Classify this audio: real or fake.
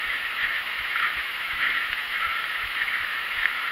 fake